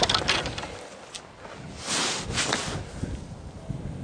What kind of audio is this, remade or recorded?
recorded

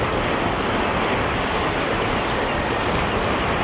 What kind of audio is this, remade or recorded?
recorded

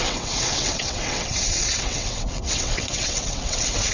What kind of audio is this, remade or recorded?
remade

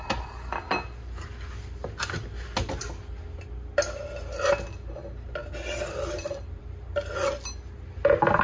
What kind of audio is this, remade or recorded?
recorded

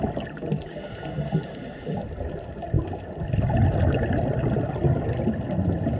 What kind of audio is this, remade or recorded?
recorded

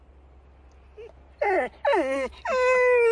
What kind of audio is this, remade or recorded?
recorded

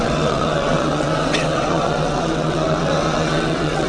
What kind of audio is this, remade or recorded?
remade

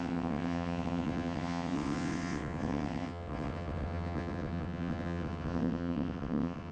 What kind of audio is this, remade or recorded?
remade